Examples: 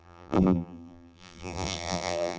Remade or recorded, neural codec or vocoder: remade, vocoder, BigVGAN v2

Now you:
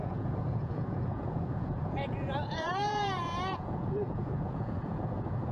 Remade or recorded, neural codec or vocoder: remade, vocoder, Vocos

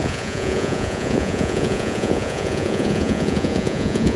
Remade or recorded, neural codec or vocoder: remade, vocoder, Vocos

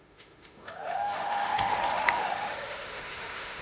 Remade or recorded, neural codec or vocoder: remade, autoencoder, DAC-VAE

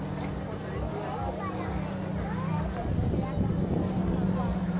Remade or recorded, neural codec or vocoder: recorded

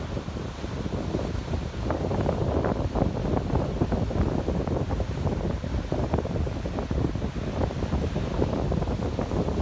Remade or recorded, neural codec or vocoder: recorded